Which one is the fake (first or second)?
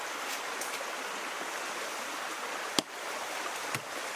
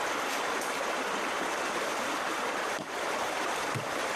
second